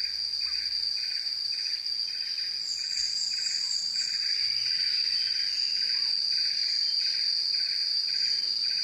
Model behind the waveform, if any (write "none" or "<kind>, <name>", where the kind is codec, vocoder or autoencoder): none